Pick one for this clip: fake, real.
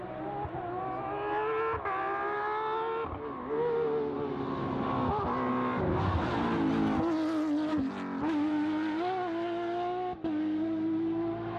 real